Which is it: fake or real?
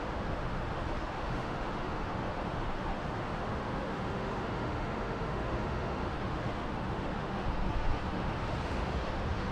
fake